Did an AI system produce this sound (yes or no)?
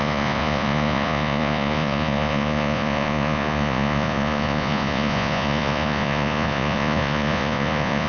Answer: yes